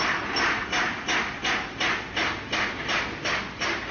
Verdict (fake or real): real